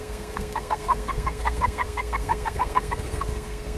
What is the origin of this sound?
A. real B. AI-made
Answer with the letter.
B